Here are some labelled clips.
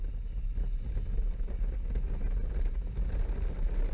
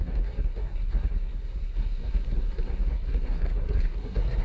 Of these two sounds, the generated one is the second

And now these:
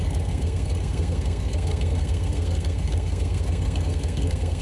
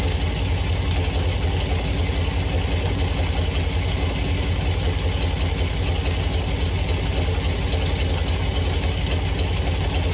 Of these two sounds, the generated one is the first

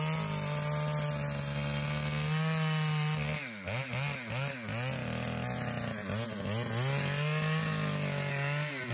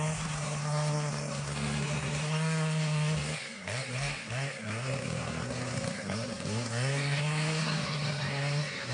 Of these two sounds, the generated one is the second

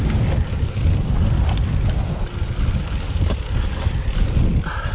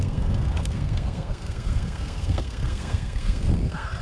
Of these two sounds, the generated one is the second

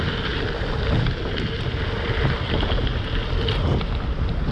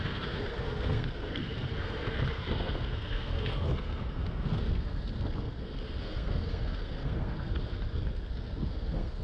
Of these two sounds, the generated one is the second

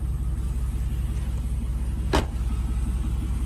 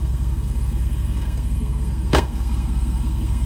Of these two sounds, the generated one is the second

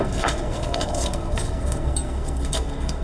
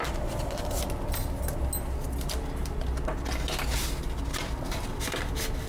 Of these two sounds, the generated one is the first